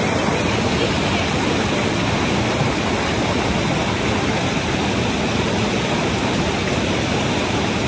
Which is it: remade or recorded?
recorded